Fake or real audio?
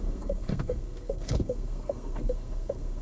fake